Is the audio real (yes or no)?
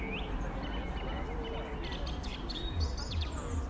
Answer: yes